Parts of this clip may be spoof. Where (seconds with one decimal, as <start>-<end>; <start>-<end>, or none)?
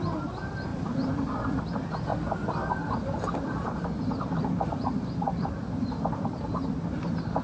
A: 0.7-1.6; 3.3-6.3